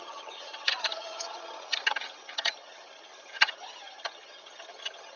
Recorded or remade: remade